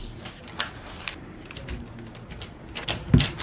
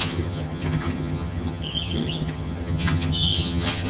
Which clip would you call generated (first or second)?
second